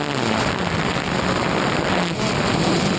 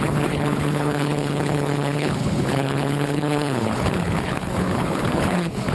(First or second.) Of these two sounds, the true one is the first